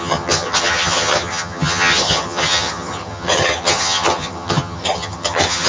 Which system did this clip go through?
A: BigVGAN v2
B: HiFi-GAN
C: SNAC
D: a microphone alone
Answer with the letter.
B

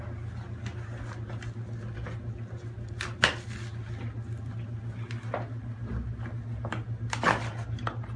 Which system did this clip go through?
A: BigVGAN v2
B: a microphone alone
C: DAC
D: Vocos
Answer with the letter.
B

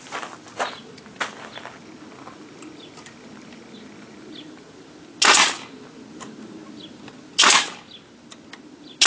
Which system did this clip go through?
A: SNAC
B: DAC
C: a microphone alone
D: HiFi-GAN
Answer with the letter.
C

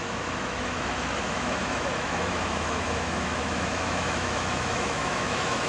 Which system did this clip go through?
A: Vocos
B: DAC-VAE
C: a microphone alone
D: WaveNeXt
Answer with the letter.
B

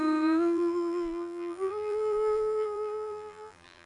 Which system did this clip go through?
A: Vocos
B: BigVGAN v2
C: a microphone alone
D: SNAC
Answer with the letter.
B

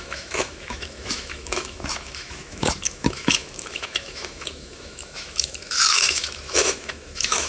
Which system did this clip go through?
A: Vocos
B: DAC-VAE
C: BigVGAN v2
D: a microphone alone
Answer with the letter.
B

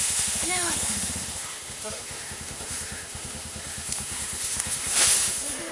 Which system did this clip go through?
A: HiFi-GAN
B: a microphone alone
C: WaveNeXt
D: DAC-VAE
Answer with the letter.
D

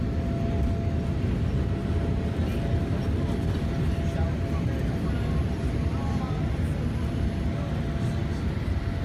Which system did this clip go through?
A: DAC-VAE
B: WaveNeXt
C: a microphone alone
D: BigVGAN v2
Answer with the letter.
C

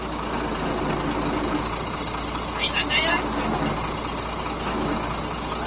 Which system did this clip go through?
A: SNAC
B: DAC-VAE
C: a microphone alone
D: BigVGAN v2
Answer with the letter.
C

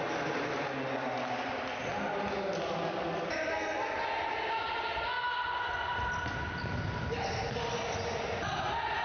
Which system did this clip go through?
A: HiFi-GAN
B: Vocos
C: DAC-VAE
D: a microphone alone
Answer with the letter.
D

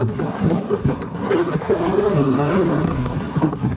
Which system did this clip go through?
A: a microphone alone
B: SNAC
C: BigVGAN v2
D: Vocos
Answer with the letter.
B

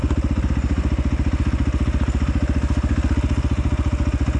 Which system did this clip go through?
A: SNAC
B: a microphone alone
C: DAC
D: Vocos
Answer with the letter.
B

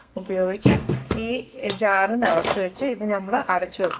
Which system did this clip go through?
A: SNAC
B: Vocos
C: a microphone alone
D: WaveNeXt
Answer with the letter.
A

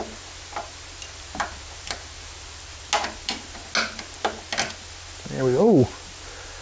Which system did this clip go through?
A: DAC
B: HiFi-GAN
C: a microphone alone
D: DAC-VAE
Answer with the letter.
C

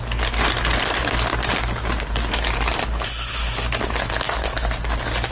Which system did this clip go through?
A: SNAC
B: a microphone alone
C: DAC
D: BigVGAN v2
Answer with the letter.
B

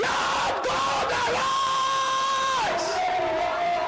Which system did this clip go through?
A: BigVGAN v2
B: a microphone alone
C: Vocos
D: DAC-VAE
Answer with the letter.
A